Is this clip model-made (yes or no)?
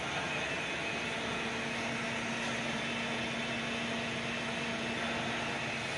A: no